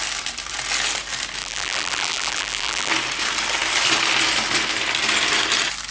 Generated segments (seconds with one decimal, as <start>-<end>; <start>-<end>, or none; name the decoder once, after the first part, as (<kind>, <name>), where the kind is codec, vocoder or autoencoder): 1.4-2.9 (vocoder, BigVGAN v2)